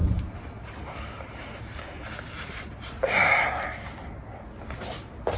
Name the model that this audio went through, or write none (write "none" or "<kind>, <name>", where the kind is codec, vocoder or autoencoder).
none